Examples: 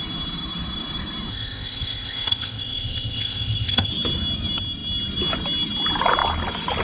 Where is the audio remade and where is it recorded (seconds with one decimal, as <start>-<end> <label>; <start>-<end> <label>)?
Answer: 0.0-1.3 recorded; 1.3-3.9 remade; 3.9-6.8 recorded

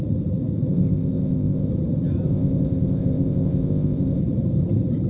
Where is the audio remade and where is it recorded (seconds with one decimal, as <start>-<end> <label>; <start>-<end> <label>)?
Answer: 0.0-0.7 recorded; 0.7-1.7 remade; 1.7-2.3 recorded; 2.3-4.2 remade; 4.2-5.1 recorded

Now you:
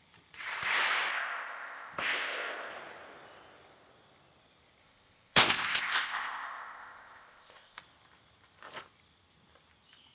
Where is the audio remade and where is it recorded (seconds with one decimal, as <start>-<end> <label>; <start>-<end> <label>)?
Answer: 0.0-1.1 recorded; 1.1-2.7 remade; 2.7-4.8 recorded; 4.8-7.8 remade; 7.8-10.1 recorded